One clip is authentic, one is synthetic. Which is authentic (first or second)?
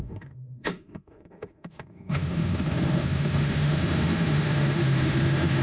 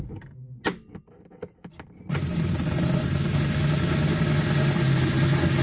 second